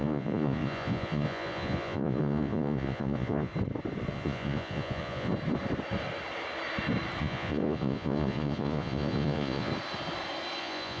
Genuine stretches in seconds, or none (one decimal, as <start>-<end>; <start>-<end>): 3.5-4.1; 5.3-7.2; 9.7-10.6